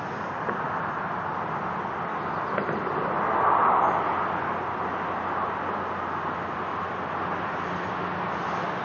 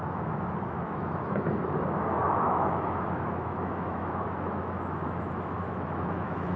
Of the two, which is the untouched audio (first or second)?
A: first